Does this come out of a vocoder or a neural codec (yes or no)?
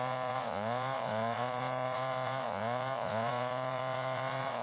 yes